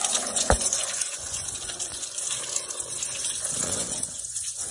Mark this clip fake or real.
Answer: fake